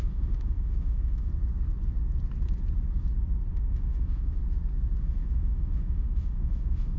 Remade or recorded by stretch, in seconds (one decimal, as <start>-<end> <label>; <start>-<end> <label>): 0.0-1.3 remade; 1.3-3.5 recorded; 3.5-4.4 remade; 4.4-5.0 recorded; 5.0-7.0 remade